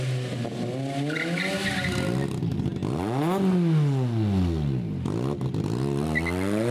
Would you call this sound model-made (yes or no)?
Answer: no